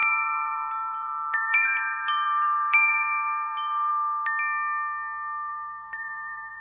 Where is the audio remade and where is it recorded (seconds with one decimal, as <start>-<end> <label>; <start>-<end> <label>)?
0.0-3.9 remade; 3.9-5.5 recorded; 5.5-6.6 remade